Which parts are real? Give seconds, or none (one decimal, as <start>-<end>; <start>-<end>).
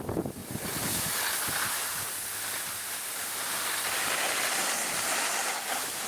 0.0-6.1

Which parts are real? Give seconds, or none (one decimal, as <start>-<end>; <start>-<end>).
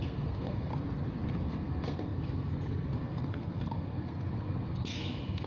0.7-1.3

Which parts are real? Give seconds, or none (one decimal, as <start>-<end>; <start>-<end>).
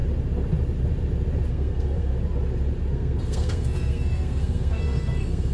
0.0-1.5; 2.1-2.9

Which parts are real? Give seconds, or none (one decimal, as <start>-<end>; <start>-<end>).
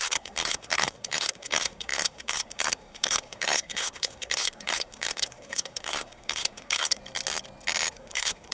7.0-7.9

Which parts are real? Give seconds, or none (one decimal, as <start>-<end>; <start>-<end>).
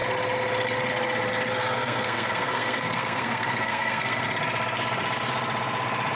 0.0-1.5; 4.2-6.2